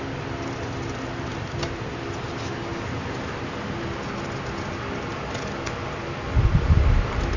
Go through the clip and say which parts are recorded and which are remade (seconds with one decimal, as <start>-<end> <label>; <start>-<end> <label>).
0.0-1.3 recorded; 1.3-1.9 remade; 1.9-7.4 recorded